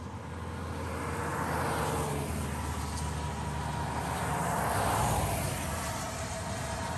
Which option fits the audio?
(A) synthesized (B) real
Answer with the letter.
B